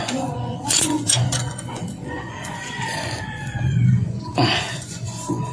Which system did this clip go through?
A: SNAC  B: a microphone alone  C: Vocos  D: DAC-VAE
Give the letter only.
C